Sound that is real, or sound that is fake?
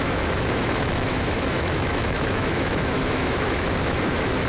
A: fake